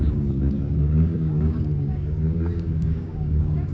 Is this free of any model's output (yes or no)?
no